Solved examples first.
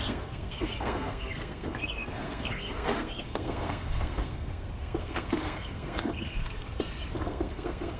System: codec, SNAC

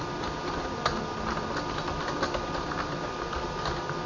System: none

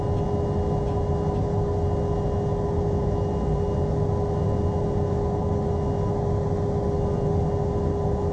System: none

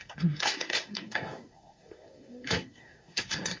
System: codec, SNAC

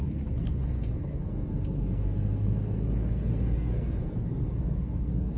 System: codec, SNAC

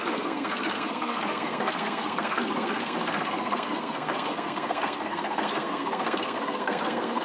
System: codec, SNAC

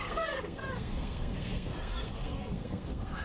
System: codec, SNAC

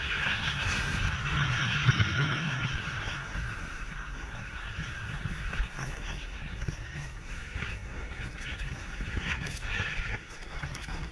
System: codec, SNAC